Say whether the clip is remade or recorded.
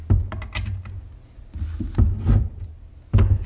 recorded